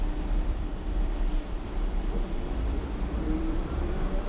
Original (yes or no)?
no